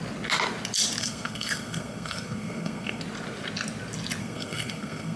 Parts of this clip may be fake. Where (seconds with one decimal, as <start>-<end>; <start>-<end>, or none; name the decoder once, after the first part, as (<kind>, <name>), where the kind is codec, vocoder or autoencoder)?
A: 1.0-3.0 (codec, SNAC); 4.2-5.2